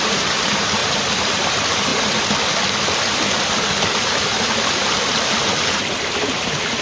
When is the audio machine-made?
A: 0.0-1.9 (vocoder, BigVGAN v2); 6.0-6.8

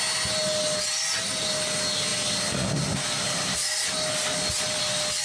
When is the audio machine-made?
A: none

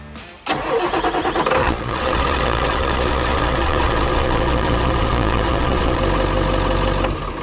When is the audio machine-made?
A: 1.6-6.0 (vocoder, Vocos)

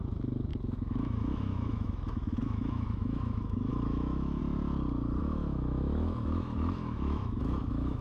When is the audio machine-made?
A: 0.0-4.4 (autoencoder, DAC-VAE); 5.2-8.0